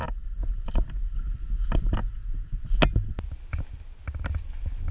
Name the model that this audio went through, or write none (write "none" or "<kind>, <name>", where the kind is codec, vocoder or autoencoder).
none